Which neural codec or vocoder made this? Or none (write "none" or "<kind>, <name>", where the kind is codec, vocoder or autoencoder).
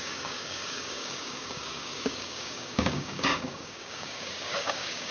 codec, DAC